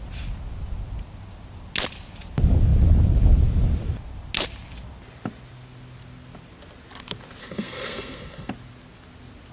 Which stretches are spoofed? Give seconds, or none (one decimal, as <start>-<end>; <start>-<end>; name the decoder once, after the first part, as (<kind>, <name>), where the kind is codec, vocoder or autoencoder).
7.4-8.5 (codec, SNAC)